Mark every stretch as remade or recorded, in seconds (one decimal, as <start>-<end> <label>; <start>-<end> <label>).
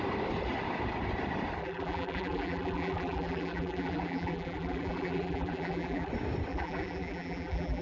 0.0-1.6 recorded; 1.6-6.1 remade; 6.1-6.5 recorded; 6.5-7.8 remade